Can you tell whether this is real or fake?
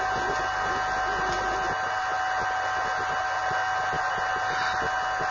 real